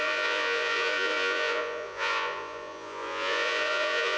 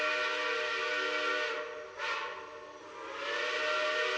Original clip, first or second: second